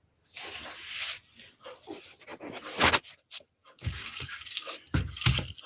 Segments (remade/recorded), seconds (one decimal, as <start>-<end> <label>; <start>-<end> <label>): 0.0-3.6 recorded; 3.6-4.8 remade; 4.8-5.7 recorded